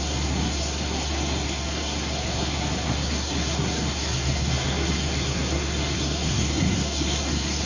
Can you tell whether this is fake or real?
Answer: fake